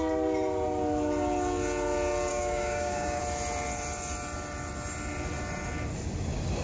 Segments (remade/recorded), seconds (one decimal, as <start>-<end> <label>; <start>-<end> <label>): 0.0-2.3 recorded; 2.3-3.2 remade; 3.2-6.6 recorded